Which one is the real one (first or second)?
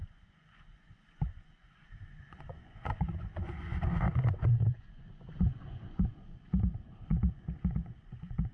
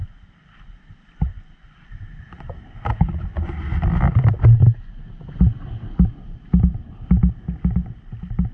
second